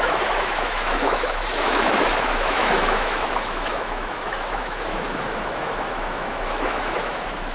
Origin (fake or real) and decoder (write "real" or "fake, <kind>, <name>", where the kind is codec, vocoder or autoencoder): fake, autoencoder, DAC-VAE